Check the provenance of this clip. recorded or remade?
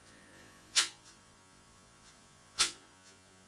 remade